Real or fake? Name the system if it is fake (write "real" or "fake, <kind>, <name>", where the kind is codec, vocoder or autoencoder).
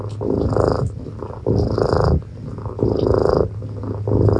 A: real